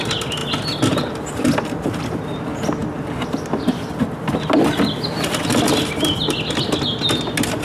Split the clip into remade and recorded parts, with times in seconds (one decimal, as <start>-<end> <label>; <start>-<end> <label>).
0.0-7.6 recorded